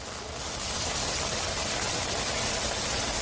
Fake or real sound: real